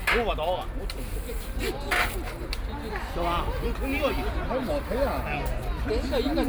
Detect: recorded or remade recorded